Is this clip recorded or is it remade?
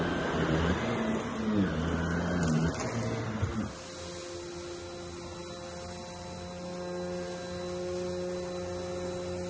recorded